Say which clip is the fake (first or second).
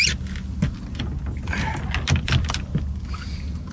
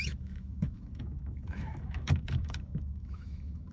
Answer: second